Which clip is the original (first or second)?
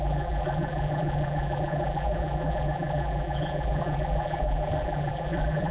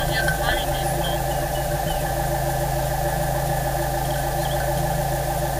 second